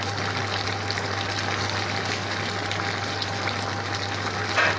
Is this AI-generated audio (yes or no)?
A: no